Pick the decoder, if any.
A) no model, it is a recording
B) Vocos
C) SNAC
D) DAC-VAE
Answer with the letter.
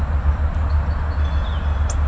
A